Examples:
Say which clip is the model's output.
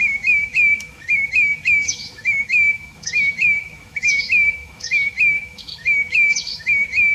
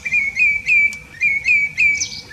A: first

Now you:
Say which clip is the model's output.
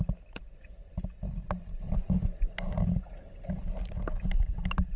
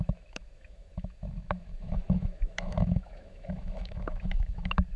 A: second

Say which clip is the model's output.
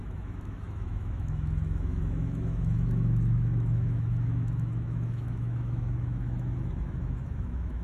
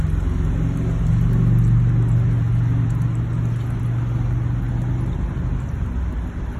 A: first